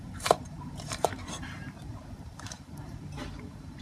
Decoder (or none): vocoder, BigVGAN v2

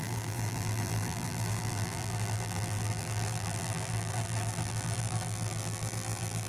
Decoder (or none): vocoder, BigVGAN v2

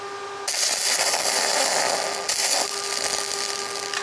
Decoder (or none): none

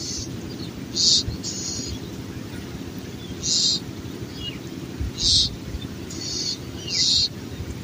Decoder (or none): none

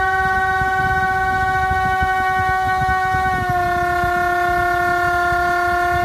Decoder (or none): none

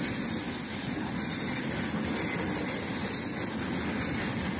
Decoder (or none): none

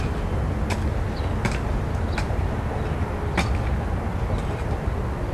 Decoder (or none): none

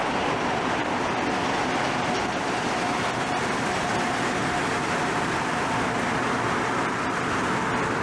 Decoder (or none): none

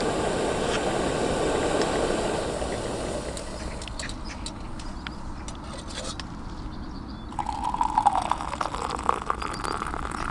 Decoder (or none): none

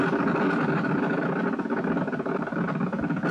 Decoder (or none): vocoder, BigVGAN v2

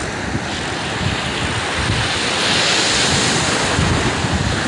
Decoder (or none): none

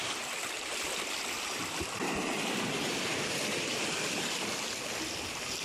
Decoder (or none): vocoder, BigVGAN v2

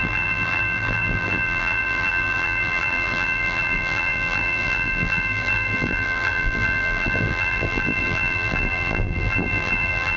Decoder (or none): vocoder, BigVGAN v2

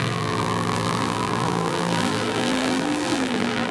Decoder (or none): vocoder, BigVGAN v2